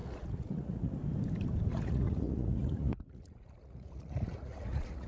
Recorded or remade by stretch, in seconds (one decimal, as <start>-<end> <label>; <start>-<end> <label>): 0.0-0.9 remade; 0.9-1.7 recorded; 1.7-5.1 remade